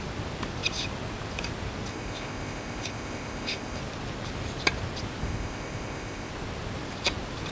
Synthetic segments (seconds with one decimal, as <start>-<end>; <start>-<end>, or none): 1.9-3.8; 5.2-6.3